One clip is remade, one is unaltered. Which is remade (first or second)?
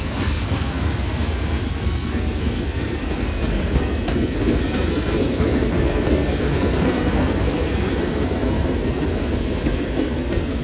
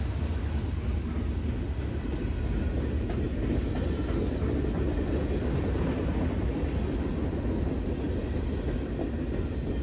first